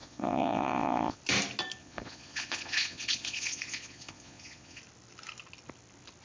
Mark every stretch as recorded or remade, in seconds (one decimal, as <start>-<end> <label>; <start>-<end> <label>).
0.0-1.2 remade; 1.2-1.8 recorded; 1.8-4.8 remade; 4.8-6.2 recorded